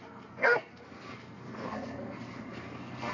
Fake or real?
fake